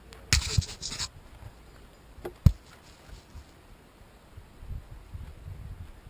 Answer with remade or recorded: recorded